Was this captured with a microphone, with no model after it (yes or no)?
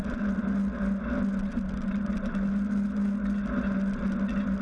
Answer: yes